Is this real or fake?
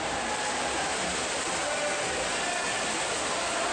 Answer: real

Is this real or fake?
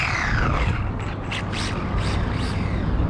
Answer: real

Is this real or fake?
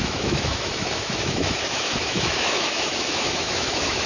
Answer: fake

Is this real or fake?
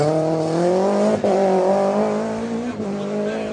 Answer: real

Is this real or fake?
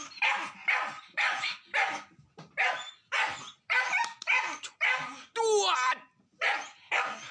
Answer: real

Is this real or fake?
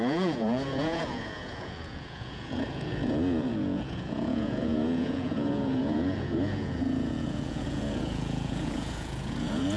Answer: fake